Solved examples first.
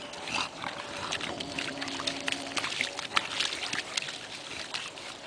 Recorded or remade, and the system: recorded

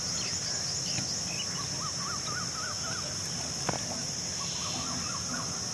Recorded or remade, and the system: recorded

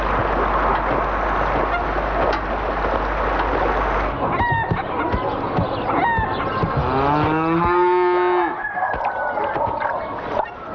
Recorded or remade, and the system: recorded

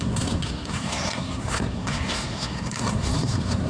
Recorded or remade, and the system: remade, codec, SNAC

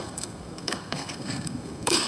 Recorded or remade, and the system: remade, codec, SNAC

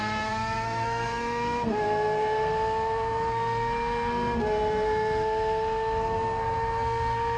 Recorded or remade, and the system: remade, codec, SNAC